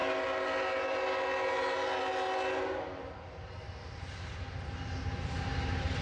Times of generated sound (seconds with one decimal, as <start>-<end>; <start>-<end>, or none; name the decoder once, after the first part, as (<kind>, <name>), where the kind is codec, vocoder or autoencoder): none